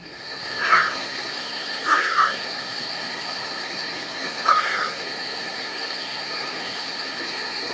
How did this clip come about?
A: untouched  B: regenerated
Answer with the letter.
B